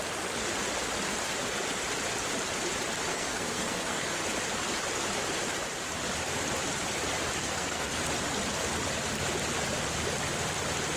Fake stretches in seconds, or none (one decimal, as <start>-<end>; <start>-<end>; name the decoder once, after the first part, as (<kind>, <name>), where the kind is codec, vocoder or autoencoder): 3.1-4.2 (codec, SNAC); 7.4-8.0